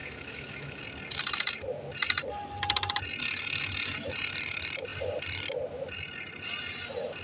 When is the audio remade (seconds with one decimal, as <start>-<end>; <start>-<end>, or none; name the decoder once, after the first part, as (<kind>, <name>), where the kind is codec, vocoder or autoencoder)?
0.0-0.8 (autoencoder, DAC-VAE)